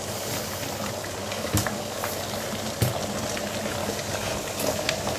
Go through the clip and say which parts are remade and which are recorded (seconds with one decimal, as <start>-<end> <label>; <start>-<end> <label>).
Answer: 0.0-1.2 recorded; 1.2-2.0 remade; 2.0-3.8 recorded; 3.8-5.2 remade